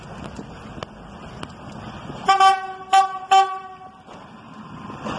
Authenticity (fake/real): real